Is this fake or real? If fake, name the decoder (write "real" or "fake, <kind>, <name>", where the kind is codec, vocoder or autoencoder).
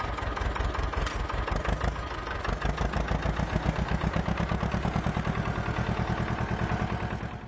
real